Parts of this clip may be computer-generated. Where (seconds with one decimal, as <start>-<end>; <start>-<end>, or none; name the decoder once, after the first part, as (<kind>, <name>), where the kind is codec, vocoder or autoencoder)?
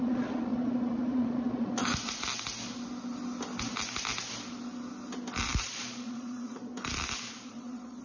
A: 0.0-1.8 (vocoder, Vocos); 5.6-6.7; 7.5-8.0